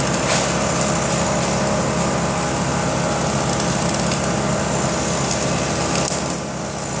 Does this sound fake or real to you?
real